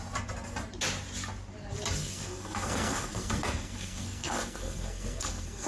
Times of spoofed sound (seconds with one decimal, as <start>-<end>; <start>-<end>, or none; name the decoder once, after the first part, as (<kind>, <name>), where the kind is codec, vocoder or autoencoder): 2.0-5.7 (codec, SNAC)